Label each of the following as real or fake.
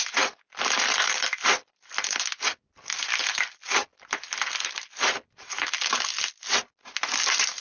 real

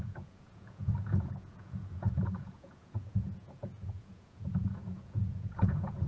fake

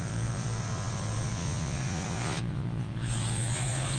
fake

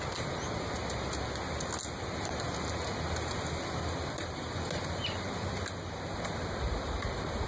real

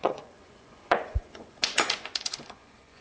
fake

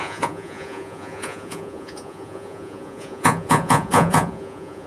fake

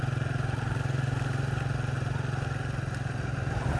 real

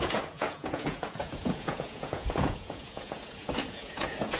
fake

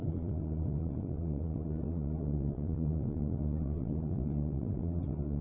fake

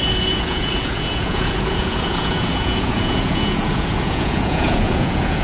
fake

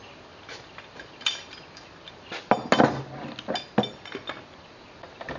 real